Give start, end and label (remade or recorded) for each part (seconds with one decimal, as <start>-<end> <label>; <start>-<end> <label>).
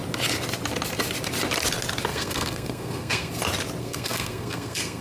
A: 0.0-2.1 recorded; 2.1-3.4 remade; 3.4-3.8 recorded; 3.8-5.0 remade